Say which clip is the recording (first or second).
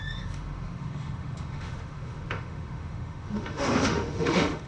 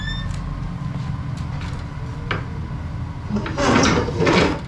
second